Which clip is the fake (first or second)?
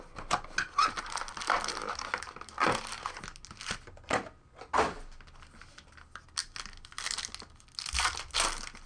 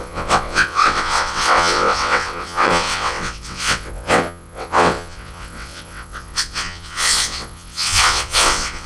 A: second